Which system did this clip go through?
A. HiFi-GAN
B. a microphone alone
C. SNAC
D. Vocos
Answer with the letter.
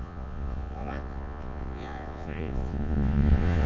D